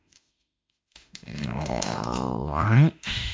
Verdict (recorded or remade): remade